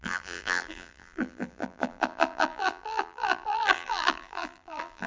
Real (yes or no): no